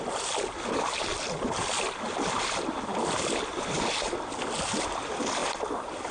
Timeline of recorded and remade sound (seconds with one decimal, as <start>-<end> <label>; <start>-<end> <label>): 0.0-1.1 recorded; 1.1-1.7 remade; 1.7-2.9 recorded; 2.9-3.5 remade; 3.5-6.1 recorded